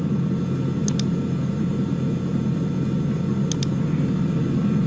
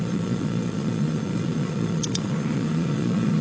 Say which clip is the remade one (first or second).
second